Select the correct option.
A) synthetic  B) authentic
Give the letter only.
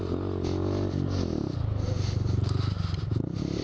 B